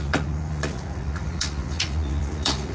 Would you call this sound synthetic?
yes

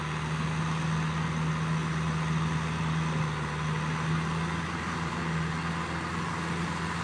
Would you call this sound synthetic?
no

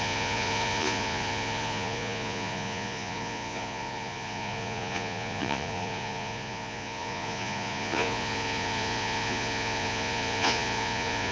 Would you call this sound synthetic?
yes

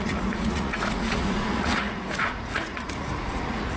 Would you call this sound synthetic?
yes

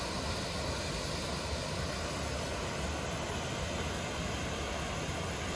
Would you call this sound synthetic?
no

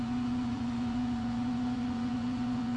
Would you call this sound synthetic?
yes